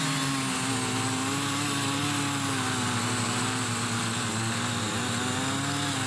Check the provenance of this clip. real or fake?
real